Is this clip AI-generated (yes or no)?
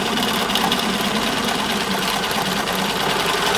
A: yes